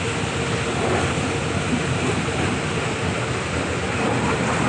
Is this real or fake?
real